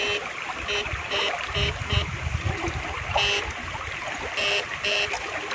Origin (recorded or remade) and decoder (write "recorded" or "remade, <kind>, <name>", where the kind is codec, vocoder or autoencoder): recorded